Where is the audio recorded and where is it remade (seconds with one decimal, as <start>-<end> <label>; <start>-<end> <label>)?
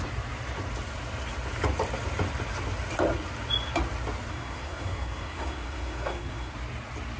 0.0-4.3 recorded; 4.3-6.5 remade; 6.5-7.2 recorded